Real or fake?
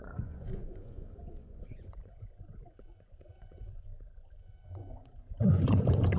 fake